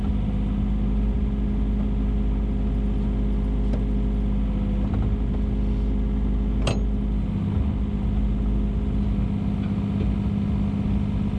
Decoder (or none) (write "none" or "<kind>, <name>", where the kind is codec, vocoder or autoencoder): none